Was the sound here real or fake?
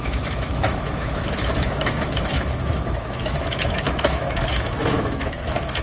fake